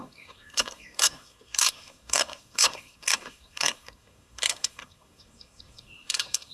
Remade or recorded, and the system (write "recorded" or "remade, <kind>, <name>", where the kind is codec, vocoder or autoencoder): remade, codec, SNAC